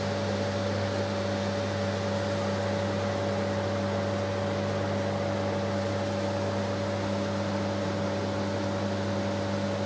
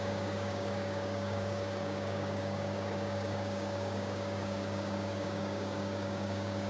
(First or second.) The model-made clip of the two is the second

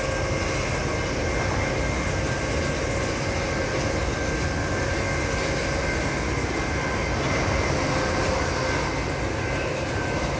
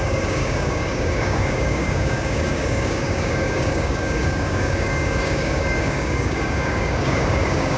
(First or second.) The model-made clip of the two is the second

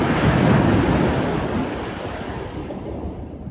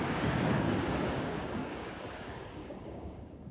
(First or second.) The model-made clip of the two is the second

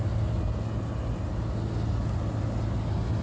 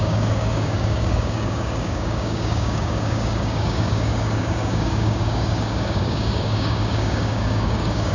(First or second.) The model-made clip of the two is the second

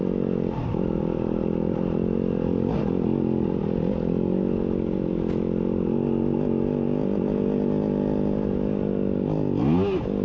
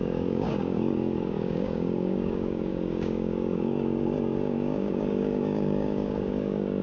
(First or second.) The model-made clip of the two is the second